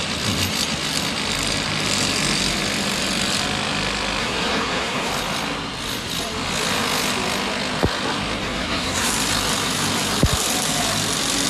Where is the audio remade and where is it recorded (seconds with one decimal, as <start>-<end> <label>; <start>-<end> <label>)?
0.0-4.2 recorded; 4.2-5.1 remade; 5.1-8.4 recorded; 8.4-9.1 remade; 9.1-11.5 recorded